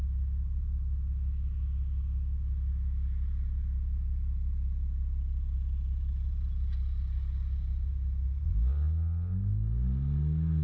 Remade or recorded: recorded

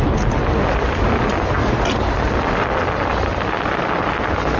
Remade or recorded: recorded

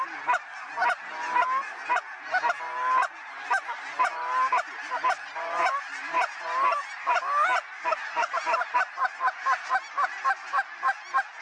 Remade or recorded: recorded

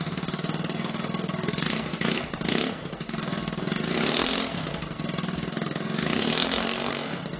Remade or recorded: remade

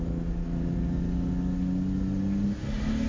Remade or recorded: recorded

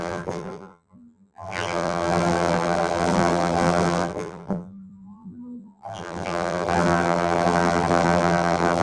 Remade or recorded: remade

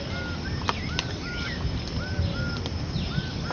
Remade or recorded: recorded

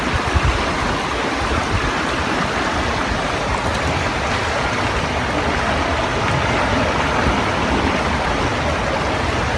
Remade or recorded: recorded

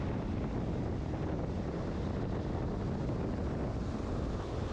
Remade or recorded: recorded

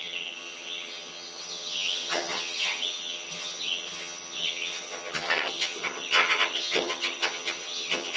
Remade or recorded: remade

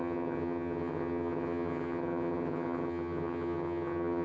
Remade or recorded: remade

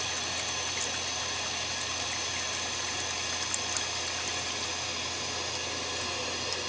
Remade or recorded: recorded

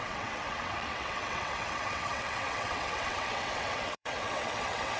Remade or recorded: remade